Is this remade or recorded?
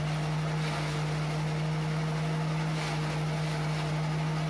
recorded